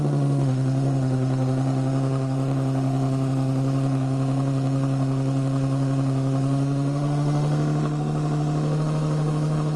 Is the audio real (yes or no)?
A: no